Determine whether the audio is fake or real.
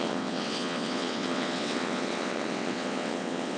fake